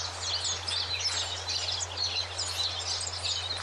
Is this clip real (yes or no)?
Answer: yes